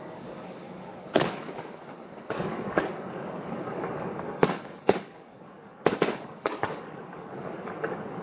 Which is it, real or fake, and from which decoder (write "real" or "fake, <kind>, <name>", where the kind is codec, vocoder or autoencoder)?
fake, codec, DAC